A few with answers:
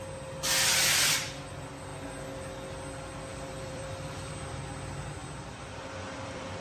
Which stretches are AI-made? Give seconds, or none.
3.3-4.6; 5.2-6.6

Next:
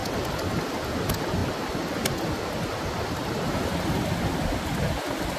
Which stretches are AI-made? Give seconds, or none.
none

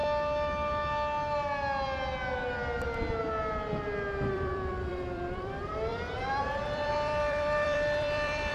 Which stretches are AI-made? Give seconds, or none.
4.3-8.5